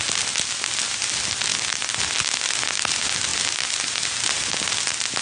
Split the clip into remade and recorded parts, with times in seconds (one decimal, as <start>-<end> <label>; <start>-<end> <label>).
0.0-1.5 recorded; 1.5-2.3 remade; 2.3-5.2 recorded